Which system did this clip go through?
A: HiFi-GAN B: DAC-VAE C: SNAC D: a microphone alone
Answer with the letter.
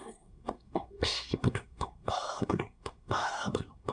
C